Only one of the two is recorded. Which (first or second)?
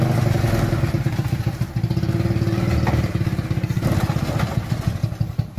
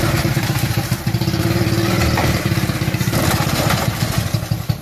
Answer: first